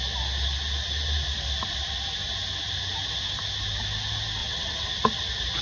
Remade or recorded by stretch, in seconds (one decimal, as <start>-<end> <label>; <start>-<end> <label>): 0.0-4.4 recorded; 4.4-4.9 remade; 4.9-5.6 recorded